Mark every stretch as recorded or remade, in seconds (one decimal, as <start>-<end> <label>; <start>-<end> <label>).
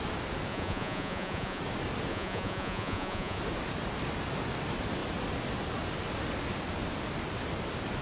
0.0-0.5 recorded; 0.5-1.6 remade; 1.6-2.1 recorded; 2.1-3.4 remade; 3.4-8.0 recorded